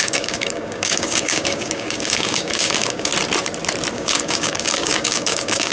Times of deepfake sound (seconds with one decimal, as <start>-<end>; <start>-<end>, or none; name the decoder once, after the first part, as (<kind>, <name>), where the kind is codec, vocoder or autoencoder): 0.0-3.1 (codec, DAC); 3.9-5.7